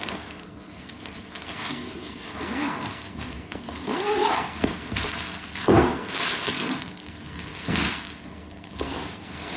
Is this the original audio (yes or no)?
no